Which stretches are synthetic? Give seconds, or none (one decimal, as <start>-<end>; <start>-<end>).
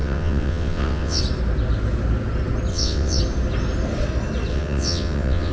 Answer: 0.0-1.2; 2.7-3.2; 4.5-5.5